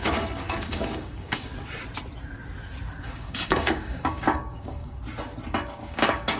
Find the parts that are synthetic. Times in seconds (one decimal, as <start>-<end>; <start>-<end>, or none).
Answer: 0.0-1.5; 3.0-5.0; 5.9-6.4